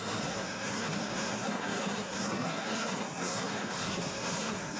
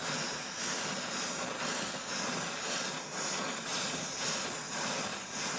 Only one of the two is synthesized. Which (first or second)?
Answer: first